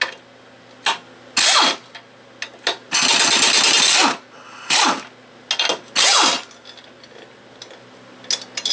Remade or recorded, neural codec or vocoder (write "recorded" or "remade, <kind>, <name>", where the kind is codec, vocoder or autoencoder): recorded